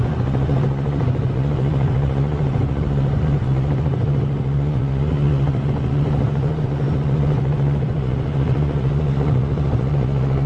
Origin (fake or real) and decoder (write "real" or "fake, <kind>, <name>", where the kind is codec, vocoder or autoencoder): fake, vocoder, Vocos